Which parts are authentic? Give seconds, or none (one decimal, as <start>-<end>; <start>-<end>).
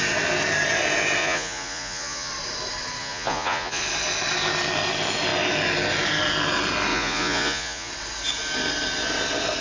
0.0-1.2; 2.3-3.0; 3.8-6.9; 7.9-9.6